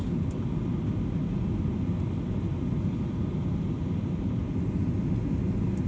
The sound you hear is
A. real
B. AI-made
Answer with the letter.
A